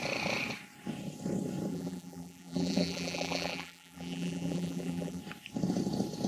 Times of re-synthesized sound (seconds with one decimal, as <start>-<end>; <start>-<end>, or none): 1.7-5.2